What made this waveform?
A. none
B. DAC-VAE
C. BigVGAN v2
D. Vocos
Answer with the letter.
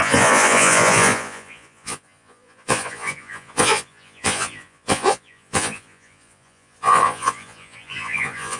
D